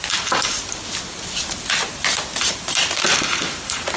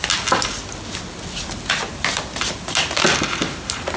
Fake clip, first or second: first